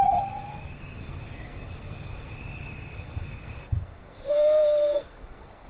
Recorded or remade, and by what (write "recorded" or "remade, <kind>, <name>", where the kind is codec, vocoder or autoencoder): remade, codec, SNAC